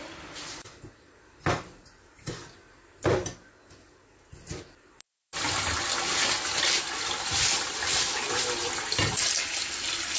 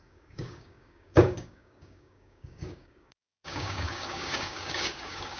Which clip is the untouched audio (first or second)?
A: first